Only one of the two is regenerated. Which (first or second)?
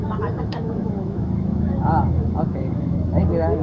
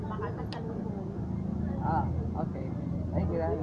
first